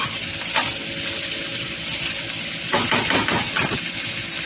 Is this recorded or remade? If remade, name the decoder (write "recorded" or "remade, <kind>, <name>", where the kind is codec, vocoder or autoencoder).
recorded